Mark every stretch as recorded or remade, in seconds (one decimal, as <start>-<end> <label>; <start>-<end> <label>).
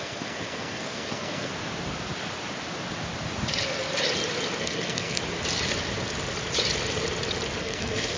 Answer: 0.0-1.5 remade; 1.5-4.6 recorded; 4.6-5.2 remade; 5.2-7.6 recorded; 7.6-8.2 remade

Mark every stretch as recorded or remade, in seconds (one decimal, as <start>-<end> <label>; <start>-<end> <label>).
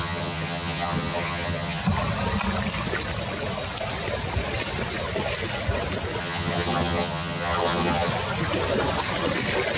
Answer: 0.0-1.8 remade; 1.8-6.2 recorded; 6.2-8.1 remade; 8.1-9.8 recorded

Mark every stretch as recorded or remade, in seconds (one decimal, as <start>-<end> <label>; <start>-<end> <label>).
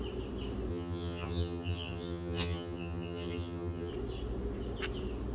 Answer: 0.0-0.7 recorded; 0.7-3.9 remade; 3.9-5.3 recorded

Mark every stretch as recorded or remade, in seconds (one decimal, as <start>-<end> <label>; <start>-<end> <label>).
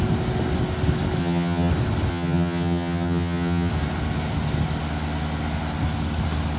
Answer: 0.0-1.2 recorded; 1.2-1.7 remade; 1.7-2.1 recorded; 2.1-3.7 remade; 3.7-6.6 recorded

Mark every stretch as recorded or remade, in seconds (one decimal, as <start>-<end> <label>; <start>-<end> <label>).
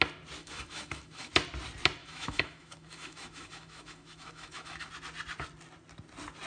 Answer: 0.0-0.4 recorded; 0.4-1.3 remade; 1.3-2.0 recorded; 2.0-4.9 remade; 4.9-6.5 recorded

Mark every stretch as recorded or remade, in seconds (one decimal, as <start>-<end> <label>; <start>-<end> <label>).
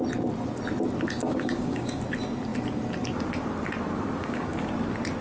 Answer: 0.0-1.2 recorded; 1.2-2.0 remade; 2.0-4.2 recorded; 4.2-4.7 remade; 4.7-5.2 recorded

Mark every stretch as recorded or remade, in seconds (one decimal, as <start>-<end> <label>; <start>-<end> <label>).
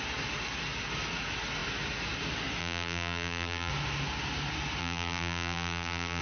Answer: 0.0-2.6 recorded; 2.6-3.7 remade; 3.7-4.8 recorded; 4.8-6.2 remade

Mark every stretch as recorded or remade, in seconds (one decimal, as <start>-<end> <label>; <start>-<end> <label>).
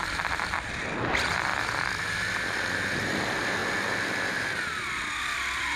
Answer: 0.0-5.8 recorded